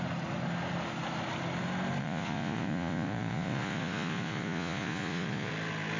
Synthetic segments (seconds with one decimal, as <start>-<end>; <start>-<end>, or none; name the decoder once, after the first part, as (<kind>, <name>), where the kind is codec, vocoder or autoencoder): 2.0-5.5 (vocoder, Vocos)